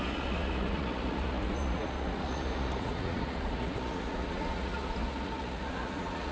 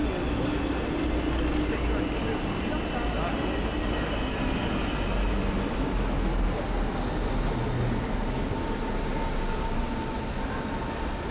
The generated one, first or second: first